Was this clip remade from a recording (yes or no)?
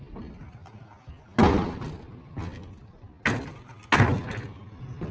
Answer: no